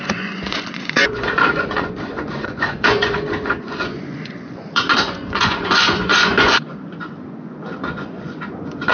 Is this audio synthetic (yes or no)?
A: yes